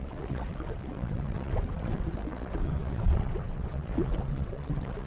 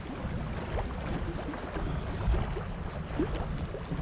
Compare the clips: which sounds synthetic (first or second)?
first